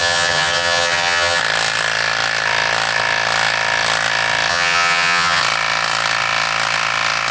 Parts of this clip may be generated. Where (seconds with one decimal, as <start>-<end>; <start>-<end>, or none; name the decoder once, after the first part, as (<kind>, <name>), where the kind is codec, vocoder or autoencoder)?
0.0-1.4 (vocoder, HiFi-GAN); 4.5-5.4